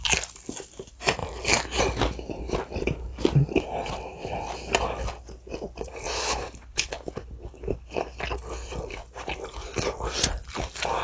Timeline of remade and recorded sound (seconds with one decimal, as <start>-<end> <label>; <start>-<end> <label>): 0.0-6.2 recorded; 6.2-8.2 remade; 8.2-11.0 recorded